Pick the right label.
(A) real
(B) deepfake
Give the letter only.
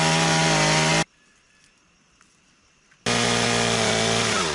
A